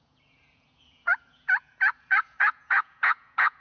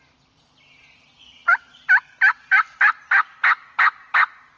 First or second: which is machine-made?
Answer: first